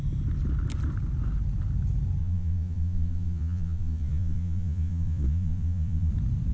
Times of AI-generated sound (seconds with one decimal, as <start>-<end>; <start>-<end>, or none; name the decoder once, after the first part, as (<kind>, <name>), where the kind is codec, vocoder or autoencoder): 2.2-6.1 (vocoder, Vocos)